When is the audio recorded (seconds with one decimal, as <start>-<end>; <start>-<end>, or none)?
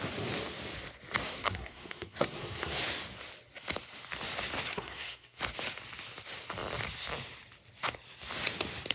0.0-1.2; 2.8-4.7; 5.4-8.9